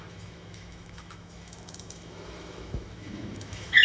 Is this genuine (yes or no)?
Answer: no